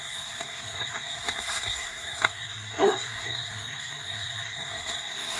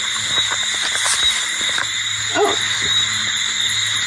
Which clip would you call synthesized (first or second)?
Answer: first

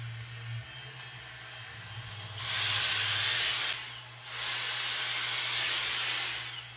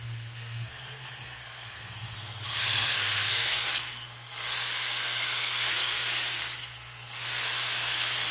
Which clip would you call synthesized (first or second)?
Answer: second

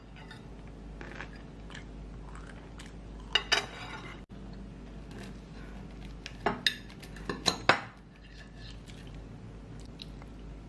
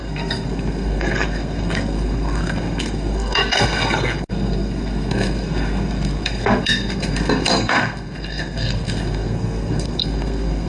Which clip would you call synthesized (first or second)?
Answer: second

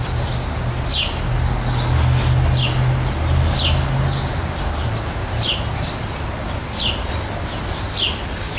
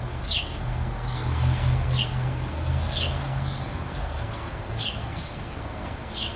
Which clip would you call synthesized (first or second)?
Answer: second